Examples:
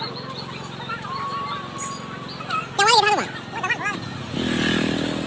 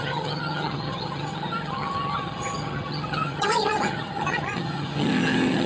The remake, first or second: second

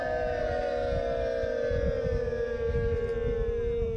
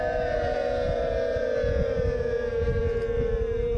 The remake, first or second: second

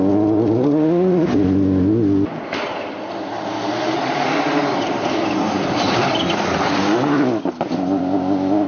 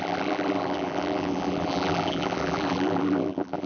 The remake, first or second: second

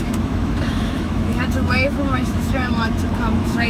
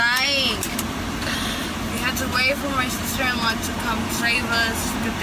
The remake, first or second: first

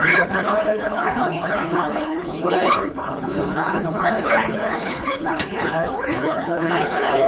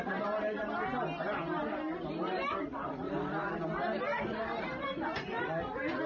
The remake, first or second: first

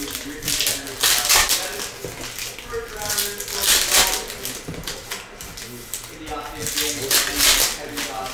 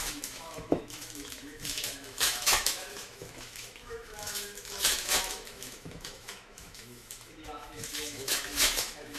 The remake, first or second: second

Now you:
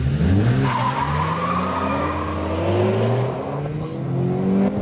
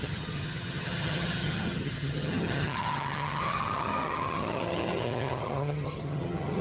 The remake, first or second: second